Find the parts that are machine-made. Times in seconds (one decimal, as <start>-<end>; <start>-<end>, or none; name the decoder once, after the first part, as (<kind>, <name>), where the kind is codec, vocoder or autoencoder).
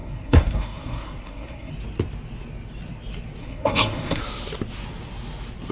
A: 0.0-1.7 (codec, SNAC); 3.4-4.2